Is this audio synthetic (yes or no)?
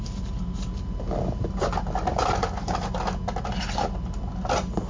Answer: no